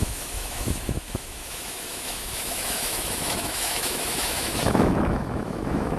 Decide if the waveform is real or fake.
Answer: fake